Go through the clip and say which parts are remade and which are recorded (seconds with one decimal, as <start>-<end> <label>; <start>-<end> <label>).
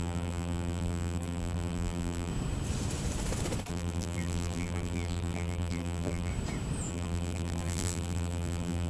0.0-2.3 remade; 2.3-3.7 recorded; 3.7-6.3 remade; 6.3-6.9 recorded; 6.9-8.9 remade